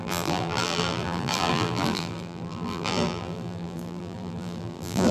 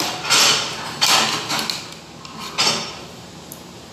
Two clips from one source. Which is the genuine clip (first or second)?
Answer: second